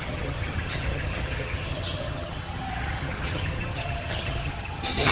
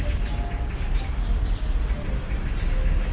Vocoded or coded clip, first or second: first